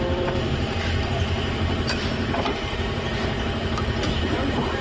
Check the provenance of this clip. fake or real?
fake